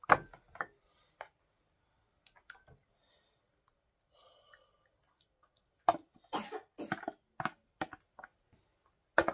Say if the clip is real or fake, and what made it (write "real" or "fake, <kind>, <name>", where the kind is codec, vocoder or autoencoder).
real